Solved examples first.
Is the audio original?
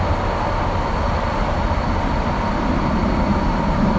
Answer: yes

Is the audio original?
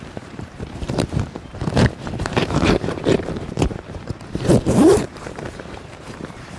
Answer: no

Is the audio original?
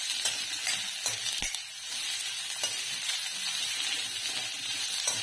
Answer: yes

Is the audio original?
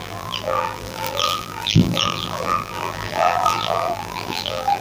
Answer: no